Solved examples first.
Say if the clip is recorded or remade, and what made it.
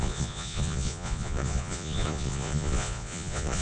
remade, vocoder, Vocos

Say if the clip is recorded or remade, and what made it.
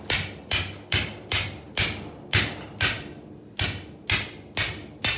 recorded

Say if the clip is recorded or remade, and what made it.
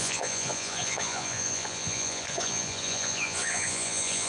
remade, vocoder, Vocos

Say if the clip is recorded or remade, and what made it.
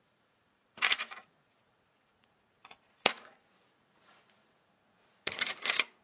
remade, vocoder, Vocos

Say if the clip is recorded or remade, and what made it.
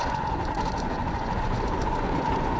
remade, vocoder, Vocos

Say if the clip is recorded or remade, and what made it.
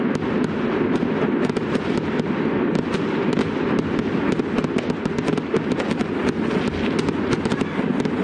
recorded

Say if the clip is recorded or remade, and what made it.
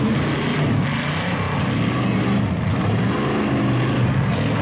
recorded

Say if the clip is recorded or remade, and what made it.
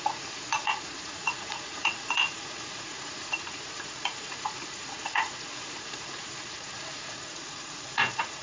remade, vocoder, Vocos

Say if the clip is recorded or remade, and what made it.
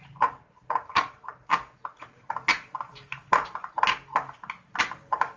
recorded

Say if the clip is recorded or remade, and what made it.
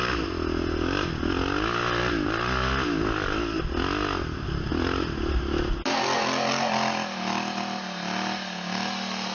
recorded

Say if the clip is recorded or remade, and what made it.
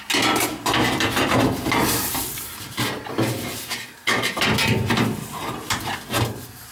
recorded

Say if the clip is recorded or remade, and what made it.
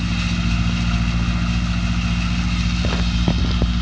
recorded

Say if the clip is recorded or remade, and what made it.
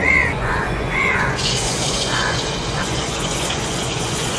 remade, vocoder, Vocos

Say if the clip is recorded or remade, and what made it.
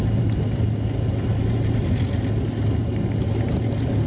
recorded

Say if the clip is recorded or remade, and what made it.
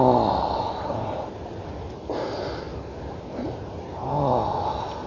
recorded